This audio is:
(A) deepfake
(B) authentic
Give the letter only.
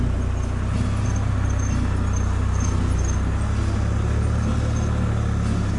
B